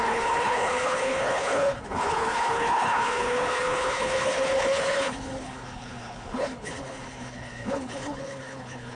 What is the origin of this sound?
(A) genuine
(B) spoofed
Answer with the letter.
B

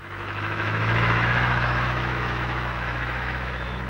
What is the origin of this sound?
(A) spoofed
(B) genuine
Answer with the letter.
A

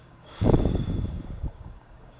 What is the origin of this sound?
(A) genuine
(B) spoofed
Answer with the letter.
B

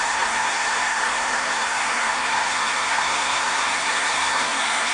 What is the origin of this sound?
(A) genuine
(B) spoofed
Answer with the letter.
B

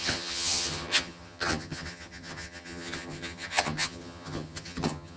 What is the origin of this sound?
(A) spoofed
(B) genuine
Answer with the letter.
A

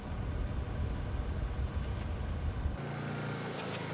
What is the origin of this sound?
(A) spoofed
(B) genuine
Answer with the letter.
B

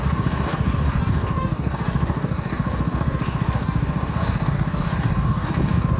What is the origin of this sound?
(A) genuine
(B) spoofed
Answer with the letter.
B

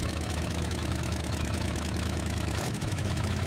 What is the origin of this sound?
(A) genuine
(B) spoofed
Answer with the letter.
B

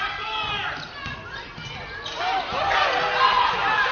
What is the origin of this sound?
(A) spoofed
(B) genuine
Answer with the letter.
B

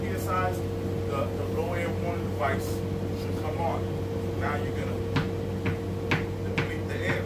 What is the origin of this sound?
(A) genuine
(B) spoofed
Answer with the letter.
A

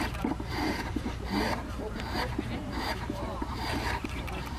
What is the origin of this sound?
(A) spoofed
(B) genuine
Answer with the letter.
A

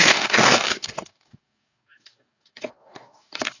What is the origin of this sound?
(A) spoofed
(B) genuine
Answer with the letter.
A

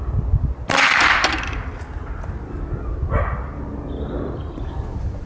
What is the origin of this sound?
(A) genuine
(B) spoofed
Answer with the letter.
A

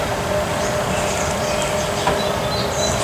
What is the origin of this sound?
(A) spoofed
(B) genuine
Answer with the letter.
B